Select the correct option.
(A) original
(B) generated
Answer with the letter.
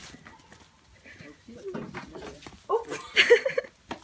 A